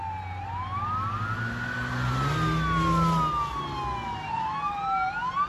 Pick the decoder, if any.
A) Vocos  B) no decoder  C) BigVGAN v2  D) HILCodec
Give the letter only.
B